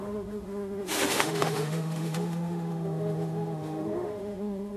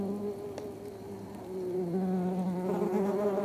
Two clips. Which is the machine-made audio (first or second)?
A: first